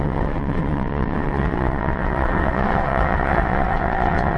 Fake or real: fake